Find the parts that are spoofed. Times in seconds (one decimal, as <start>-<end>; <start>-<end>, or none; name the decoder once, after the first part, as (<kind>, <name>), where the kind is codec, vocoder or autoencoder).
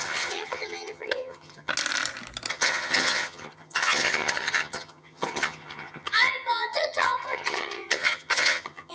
0.0-1.7 (vocoder, HiFi-GAN); 2.5-8.9